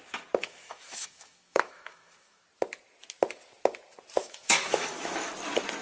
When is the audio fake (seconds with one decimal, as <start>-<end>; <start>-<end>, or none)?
0.4-2.4; 4.2-5.3